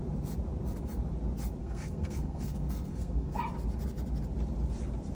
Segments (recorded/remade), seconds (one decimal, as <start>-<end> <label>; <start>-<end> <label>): 0.0-1.6 recorded; 1.6-3.4 remade; 3.4-5.1 recorded